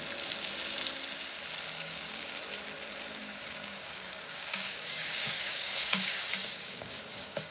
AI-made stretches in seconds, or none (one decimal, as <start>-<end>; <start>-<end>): 1.8-2.4; 3.2-7.5